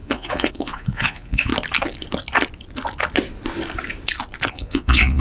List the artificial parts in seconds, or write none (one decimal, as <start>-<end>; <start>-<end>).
0.0-1.5; 4.5-5.2